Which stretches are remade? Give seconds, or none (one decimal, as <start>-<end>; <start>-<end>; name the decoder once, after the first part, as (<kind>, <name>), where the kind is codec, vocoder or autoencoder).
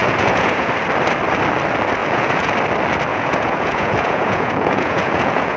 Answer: 0.0-0.7 (vocoder, Vocos); 2.0-2.5; 3.1-5.6